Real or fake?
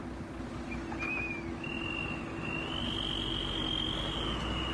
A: real